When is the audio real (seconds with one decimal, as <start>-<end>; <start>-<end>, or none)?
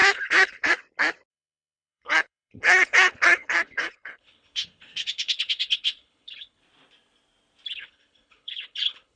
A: 0.7-1.3; 6.6-7.7